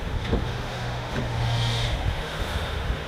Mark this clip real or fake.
fake